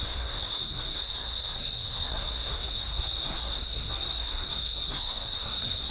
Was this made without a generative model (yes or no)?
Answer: no